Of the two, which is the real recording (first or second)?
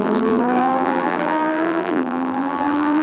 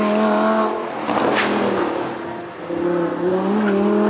second